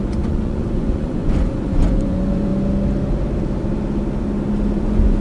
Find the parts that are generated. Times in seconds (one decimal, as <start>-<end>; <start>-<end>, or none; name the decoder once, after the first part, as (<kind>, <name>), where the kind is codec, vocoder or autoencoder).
0.0-2.5 (vocoder, Vocos); 4.8-5.2